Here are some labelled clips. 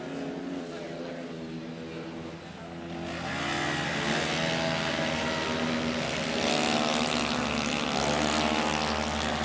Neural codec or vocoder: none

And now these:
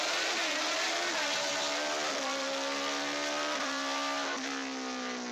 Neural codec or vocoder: none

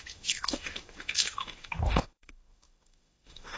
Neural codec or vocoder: autoencoder, DAC-VAE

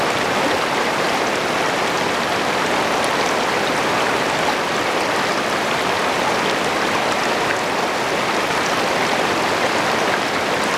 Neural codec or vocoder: none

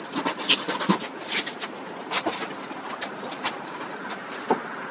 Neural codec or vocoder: none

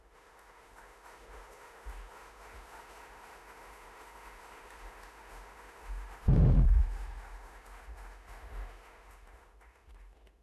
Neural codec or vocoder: autoencoder, DAC-VAE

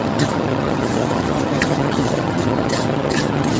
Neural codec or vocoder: vocoder, HiFi-GAN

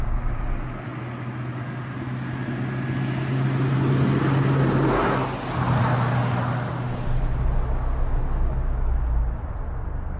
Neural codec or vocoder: none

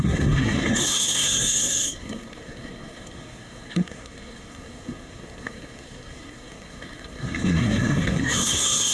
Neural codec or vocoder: codec, SNAC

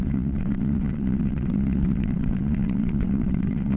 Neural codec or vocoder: vocoder, WaveNeXt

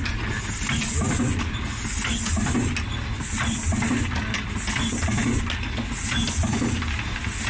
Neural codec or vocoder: none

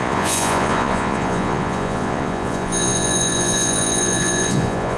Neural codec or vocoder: vocoder, Vocos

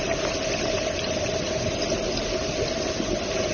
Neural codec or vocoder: vocoder, BigVGAN v2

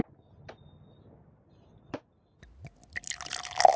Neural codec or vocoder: none